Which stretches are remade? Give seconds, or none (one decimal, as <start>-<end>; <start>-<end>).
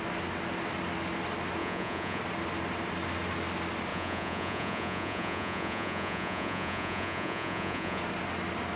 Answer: 1.6-2.2; 3.9-8.0